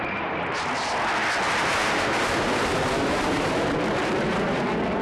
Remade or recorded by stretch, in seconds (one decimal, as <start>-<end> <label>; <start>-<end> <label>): 0.0-0.7 remade; 0.7-1.6 recorded; 1.6-5.0 remade